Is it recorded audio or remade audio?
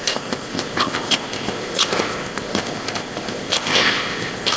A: remade